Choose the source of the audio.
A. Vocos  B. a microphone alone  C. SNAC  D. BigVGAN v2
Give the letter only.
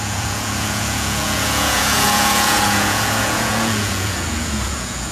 A